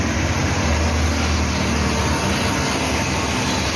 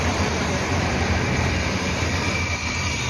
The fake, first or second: second